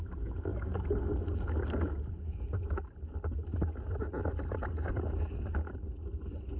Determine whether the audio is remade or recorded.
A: recorded